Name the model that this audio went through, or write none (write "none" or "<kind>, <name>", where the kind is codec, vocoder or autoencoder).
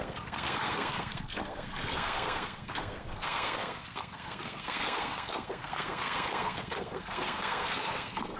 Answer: codec, SNAC